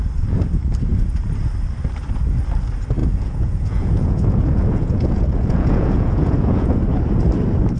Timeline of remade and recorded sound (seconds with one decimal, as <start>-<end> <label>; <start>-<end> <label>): 0.0-3.0 recorded; 3.0-6.8 remade; 6.8-7.8 recorded